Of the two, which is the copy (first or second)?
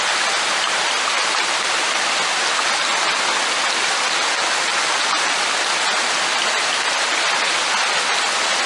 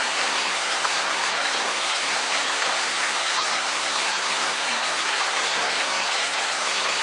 second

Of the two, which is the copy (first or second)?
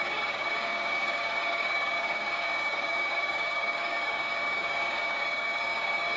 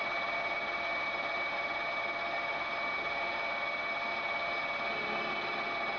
first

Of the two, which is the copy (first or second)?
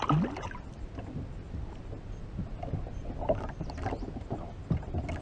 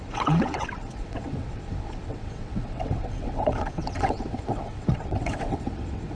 second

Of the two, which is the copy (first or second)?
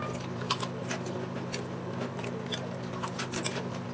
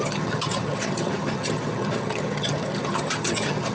second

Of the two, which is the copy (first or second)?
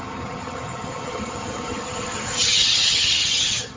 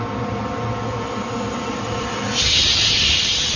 first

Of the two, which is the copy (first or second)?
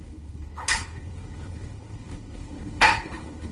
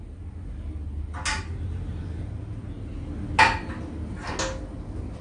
first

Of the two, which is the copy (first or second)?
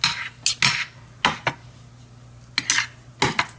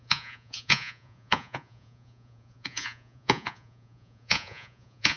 second